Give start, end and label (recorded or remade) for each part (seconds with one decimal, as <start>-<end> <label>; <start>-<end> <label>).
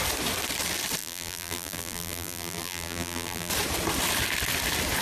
0.0-1.0 recorded; 1.0-3.5 remade; 3.5-5.0 recorded